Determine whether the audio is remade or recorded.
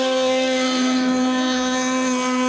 remade